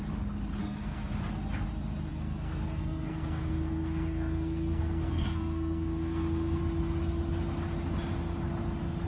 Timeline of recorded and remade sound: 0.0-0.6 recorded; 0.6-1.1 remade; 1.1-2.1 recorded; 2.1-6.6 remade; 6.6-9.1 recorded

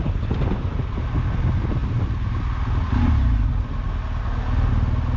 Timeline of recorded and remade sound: 0.0-5.2 recorded

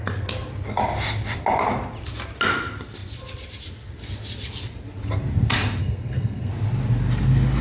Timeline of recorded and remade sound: 0.0-5.8 recorded; 5.8-6.5 remade; 6.5-7.6 recorded

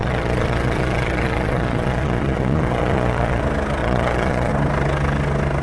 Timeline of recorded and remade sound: 0.0-3.4 remade; 3.4-3.8 recorded; 3.8-4.5 remade; 4.5-5.6 recorded

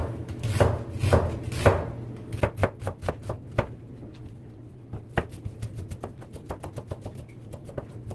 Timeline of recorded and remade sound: 0.0-0.5 remade; 0.5-8.1 recorded

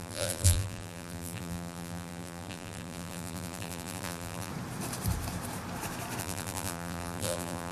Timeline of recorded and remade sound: 0.0-4.5 remade; 4.5-6.2 recorded; 6.2-7.7 remade

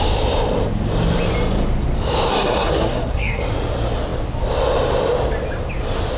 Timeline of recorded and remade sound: 0.0-2.3 recorded; 2.3-3.4 remade; 3.4-6.2 recorded